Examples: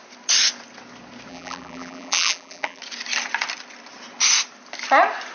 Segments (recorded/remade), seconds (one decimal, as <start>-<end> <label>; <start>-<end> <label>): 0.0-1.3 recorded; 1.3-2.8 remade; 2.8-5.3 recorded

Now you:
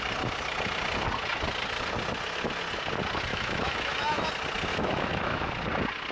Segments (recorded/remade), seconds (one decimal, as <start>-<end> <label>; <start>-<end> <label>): 0.0-3.3 recorded; 3.3-4.3 remade; 4.3-4.7 recorded; 4.7-5.5 remade; 5.5-6.1 recorded

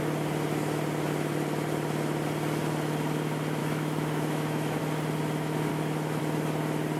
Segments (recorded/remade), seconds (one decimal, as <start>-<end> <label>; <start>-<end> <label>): 0.0-3.6 recorded; 3.6-4.8 remade; 4.8-5.7 recorded; 5.7-6.2 remade; 6.2-7.0 recorded

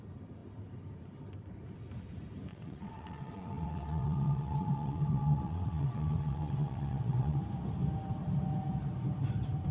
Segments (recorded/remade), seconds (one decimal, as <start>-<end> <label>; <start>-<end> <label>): 0.0-2.5 recorded; 2.5-7.4 remade; 7.4-9.7 recorded

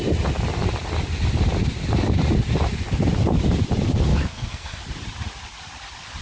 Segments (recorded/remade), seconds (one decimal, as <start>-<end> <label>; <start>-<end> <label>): 0.0-4.1 recorded; 4.1-4.8 remade; 4.8-6.2 recorded

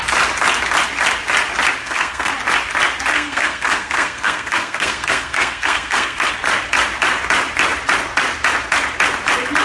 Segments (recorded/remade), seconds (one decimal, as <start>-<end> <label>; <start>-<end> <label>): 0.0-1.8 recorded; 1.8-2.3 remade; 2.3-3.1 recorded; 3.1-6.3 remade; 6.3-9.6 recorded